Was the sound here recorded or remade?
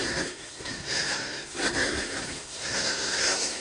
remade